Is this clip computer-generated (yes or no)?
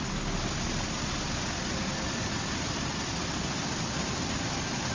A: no